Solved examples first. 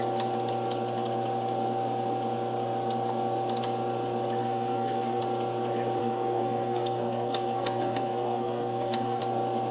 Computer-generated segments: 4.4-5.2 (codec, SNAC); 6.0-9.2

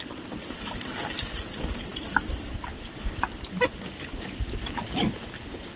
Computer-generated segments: none